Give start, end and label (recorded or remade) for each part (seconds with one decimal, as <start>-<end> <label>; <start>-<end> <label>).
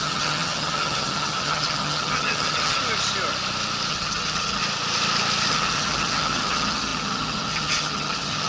0.0-2.8 remade; 2.8-3.9 recorded; 3.9-4.6 remade; 4.6-5.5 recorded; 5.5-8.5 remade